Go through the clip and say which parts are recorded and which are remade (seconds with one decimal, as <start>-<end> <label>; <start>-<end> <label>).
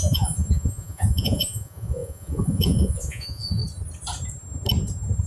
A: 0.0-3.6 remade; 3.6-5.3 recorded